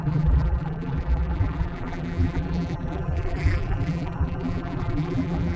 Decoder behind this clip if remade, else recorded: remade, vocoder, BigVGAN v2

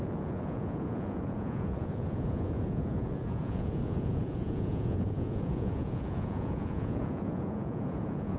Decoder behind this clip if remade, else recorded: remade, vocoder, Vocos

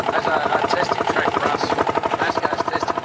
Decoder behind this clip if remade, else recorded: remade, vocoder, BigVGAN v2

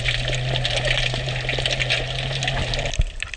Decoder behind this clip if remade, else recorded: recorded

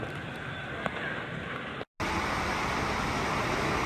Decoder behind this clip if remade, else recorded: recorded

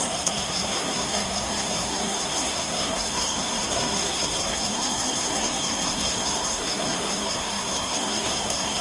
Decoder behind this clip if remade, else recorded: remade, codec, SNAC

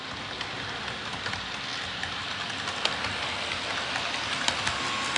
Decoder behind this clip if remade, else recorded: recorded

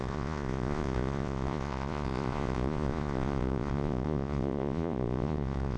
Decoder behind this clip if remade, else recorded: remade, vocoder, Vocos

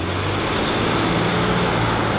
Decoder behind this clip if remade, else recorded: recorded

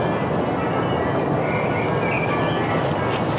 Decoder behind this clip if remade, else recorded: recorded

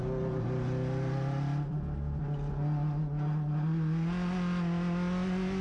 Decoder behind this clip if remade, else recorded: recorded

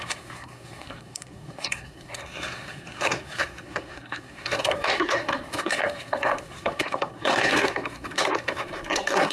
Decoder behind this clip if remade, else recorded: remade, codec, SNAC